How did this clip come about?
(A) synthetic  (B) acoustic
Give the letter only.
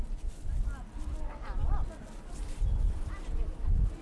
B